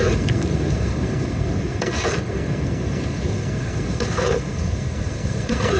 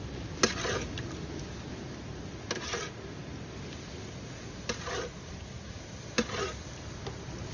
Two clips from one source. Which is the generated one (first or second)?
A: first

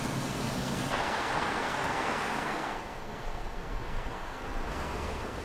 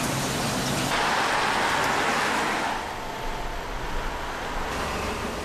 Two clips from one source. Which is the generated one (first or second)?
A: first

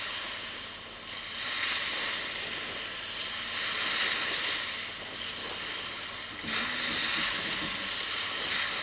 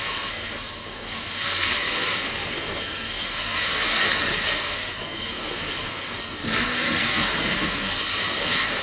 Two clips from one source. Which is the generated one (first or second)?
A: second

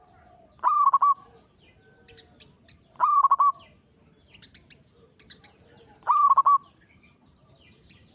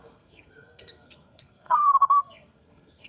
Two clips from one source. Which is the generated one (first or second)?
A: second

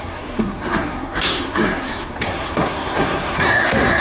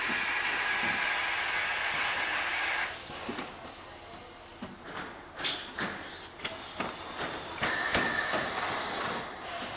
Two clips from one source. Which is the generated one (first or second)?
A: first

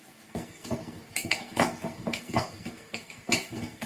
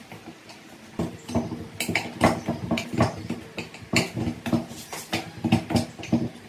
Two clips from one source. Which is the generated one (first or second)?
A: first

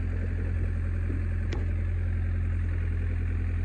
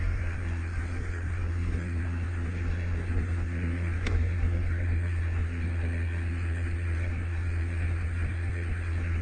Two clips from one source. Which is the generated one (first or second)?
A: second